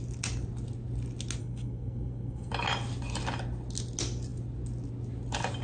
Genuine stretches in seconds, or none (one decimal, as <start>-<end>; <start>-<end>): 0.0-1.4; 2.5-5.6